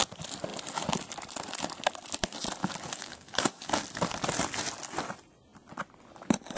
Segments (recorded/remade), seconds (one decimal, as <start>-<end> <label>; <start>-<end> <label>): 0.0-2.6 recorded; 2.6-3.8 remade; 3.8-6.6 recorded